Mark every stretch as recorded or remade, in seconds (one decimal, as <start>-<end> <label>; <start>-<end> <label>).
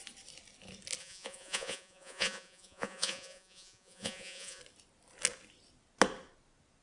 0.0-1.0 recorded; 1.0-4.6 remade; 4.6-6.8 recorded